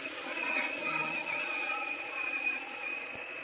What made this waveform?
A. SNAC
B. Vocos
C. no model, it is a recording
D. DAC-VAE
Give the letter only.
B